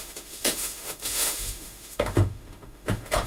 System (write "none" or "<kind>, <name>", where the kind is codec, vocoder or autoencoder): autoencoder, DAC-VAE